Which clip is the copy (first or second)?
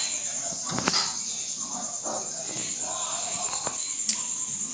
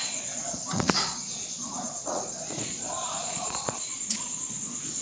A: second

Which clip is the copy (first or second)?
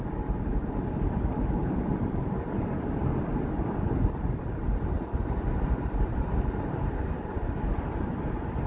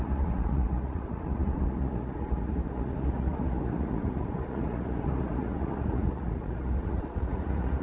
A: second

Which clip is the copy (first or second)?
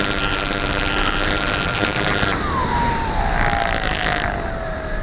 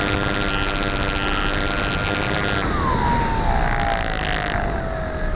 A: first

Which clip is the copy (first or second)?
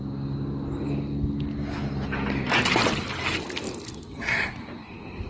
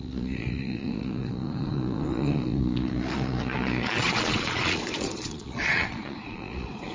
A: second